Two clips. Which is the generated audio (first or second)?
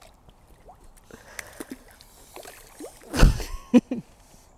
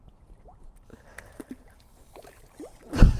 second